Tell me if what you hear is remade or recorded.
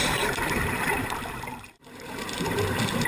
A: remade